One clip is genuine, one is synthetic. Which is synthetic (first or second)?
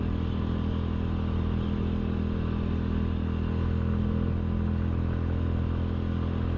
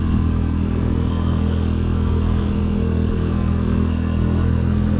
second